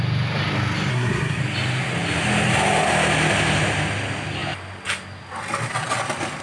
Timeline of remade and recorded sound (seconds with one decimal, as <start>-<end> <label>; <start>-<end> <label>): 0.0-0.9 recorded; 0.9-1.4 remade; 1.4-6.4 recorded